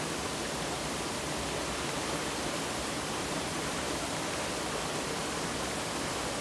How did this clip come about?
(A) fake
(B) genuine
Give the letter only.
B